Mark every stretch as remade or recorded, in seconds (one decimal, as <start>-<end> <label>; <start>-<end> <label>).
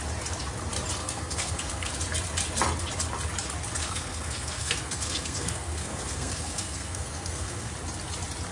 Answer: 0.0-1.0 recorded; 1.0-1.9 remade; 1.9-3.8 recorded; 3.8-7.7 remade; 7.7-8.5 recorded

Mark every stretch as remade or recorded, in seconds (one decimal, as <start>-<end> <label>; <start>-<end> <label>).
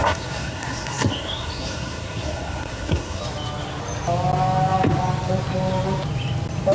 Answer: 0.0-3.2 remade; 3.2-6.7 recorded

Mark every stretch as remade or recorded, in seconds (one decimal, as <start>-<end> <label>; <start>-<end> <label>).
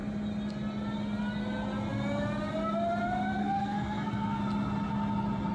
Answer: 0.0-3.4 recorded; 3.4-4.4 remade; 4.4-5.5 recorded